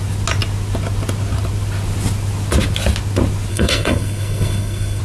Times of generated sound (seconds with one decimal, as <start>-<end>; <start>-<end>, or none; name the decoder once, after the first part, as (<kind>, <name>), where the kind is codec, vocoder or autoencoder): 3.5-5.0 (codec, SNAC)